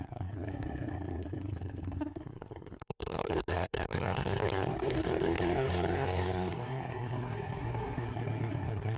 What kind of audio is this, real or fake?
fake